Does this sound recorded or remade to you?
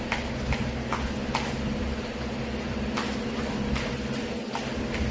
recorded